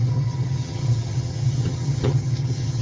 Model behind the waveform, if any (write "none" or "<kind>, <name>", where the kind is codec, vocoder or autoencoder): vocoder, HiFi-GAN